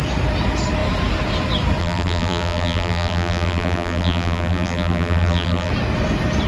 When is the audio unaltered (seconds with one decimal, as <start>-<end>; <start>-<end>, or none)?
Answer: 0.0-1.8; 5.7-6.5